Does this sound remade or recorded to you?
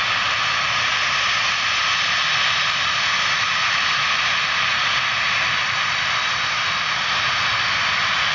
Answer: recorded